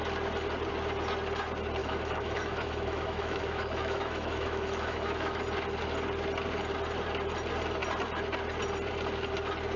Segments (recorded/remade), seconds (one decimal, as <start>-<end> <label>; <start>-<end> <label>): 0.0-1.8 recorded; 1.8-5.4 remade; 5.4-9.8 recorded